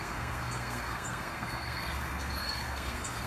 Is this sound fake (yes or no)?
yes